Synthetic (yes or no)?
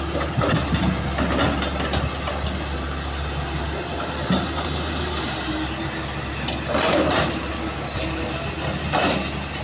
no